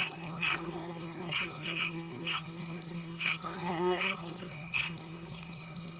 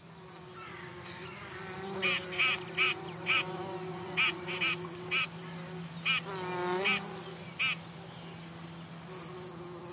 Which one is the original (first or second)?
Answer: second